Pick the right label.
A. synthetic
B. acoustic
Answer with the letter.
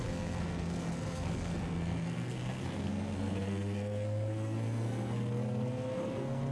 A